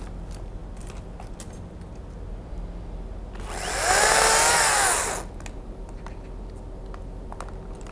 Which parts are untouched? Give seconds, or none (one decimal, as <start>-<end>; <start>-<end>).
0.0-7.9